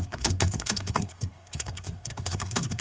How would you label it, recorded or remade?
remade